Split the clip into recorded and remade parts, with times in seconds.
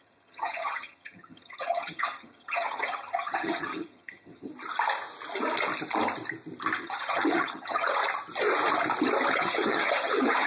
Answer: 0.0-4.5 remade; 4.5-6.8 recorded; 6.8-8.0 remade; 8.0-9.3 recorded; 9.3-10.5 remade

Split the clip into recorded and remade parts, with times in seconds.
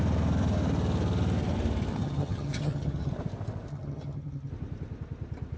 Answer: 0.0-1.9 recorded; 1.9-3.1 remade; 3.1-3.7 recorded; 3.7-4.5 remade; 4.5-5.6 recorded